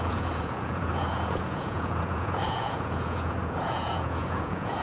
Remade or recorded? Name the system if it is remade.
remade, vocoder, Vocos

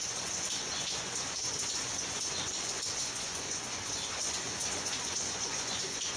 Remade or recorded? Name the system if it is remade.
remade, vocoder, Vocos